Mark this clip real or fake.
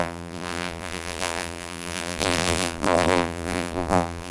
fake